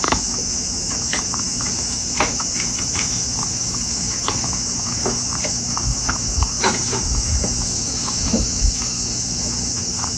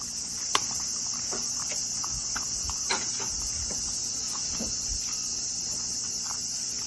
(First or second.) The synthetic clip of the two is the first